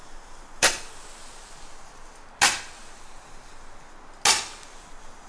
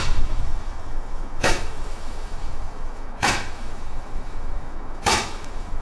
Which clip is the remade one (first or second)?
second